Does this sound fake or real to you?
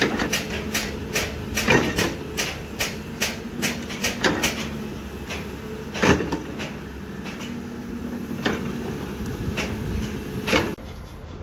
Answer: real